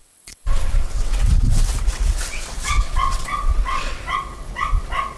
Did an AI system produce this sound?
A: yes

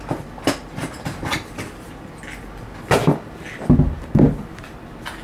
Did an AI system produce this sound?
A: no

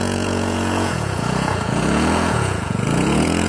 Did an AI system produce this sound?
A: yes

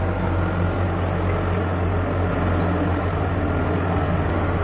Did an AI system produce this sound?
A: no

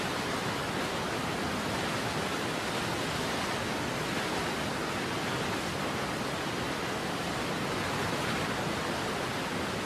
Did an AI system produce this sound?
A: no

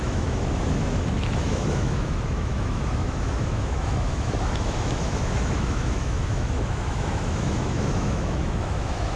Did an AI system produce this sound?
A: yes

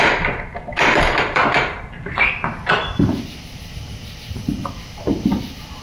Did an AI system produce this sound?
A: no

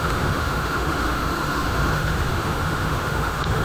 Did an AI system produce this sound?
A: yes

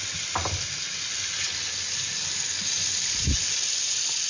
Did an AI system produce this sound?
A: no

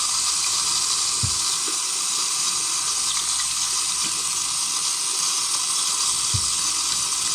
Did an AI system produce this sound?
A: no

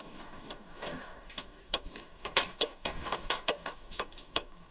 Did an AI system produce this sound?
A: yes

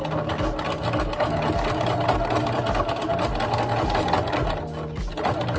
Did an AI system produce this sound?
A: no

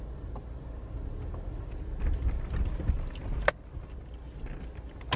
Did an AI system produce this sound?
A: no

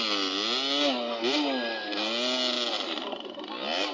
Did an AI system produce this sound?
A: no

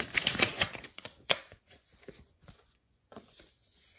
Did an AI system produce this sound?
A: yes